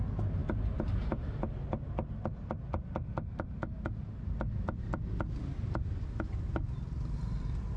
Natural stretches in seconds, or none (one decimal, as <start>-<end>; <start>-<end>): 0.0-7.8